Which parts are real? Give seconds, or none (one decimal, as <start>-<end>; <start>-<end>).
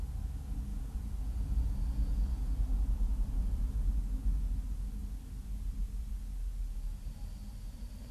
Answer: 0.0-0.7; 3.9-8.1